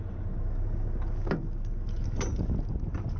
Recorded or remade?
recorded